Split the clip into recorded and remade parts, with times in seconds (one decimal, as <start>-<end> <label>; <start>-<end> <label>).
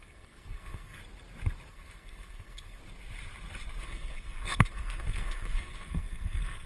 0.0-1.0 remade; 1.0-1.7 recorded; 1.7-2.8 remade; 2.8-3.8 recorded; 3.8-6.7 remade